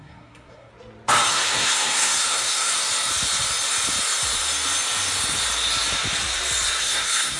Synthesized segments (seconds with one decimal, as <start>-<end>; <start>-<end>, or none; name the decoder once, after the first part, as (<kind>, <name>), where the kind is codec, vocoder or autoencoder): 0.0-0.7 (codec, SNAC); 1.3-2.7; 6.8-7.4